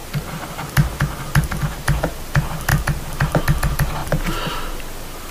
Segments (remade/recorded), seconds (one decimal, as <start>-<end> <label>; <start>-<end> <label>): 0.0-4.0 recorded; 4.0-4.8 remade; 4.8-5.3 recorded